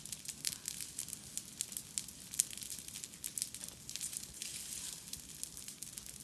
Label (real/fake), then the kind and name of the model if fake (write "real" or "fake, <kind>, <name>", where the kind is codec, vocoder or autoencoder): real